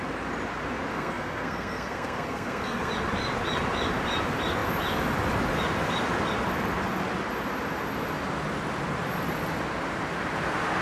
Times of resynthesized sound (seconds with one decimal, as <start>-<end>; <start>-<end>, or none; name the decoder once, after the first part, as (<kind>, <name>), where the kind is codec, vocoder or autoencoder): 0.9-2.9 (codec, SNAC)